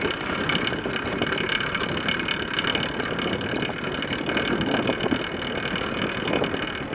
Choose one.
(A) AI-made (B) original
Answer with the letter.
B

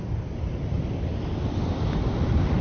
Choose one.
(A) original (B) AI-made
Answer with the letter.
B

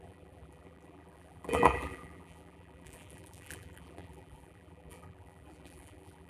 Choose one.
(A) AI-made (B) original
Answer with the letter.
A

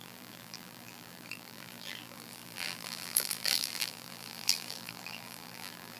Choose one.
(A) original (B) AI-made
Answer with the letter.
B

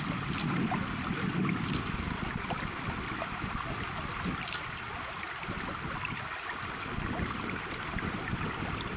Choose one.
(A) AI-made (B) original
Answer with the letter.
A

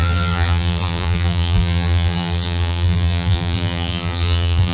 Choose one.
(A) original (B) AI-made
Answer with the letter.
B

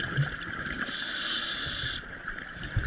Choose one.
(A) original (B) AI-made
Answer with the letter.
A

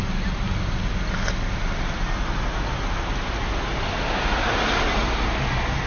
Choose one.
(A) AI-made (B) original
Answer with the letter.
B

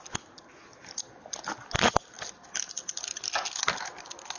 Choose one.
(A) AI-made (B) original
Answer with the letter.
B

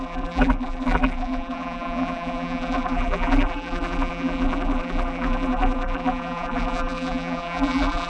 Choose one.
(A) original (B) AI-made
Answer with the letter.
B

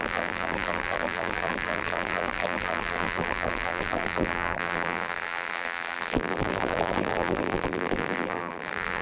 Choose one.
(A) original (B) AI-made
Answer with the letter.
B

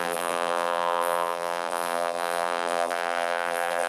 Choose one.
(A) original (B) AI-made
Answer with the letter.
B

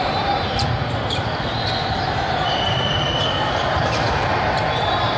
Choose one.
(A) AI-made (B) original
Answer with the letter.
A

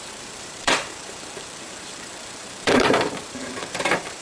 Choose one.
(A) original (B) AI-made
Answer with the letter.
B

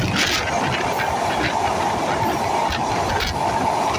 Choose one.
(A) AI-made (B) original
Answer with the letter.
B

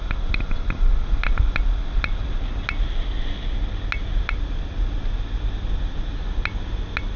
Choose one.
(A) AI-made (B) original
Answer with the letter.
B